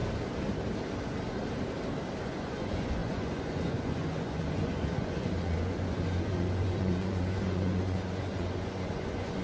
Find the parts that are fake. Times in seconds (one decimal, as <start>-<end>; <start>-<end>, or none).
2.2-9.4